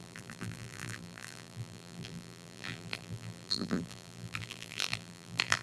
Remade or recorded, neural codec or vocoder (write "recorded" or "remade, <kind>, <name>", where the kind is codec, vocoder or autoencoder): remade, vocoder, BigVGAN v2